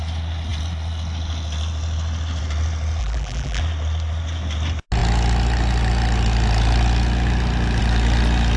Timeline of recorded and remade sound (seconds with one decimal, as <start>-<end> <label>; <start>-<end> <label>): 0.0-3.0 recorded; 3.0-3.6 remade; 3.6-8.6 recorded